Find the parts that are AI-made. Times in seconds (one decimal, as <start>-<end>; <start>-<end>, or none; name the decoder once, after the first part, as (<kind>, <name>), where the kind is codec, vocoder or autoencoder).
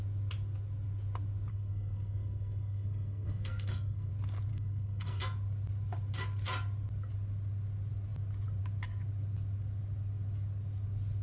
1.5-4.1 (codec, SNAC); 4.5-5.2